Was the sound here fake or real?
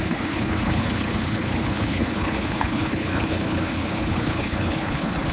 fake